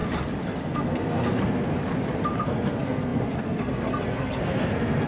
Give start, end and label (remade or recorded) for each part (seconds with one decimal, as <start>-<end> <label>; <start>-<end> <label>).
0.0-0.6 recorded; 0.6-1.7 remade; 1.7-2.4 recorded; 2.4-5.1 remade